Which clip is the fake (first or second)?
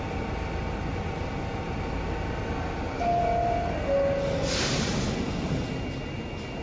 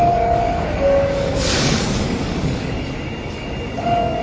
second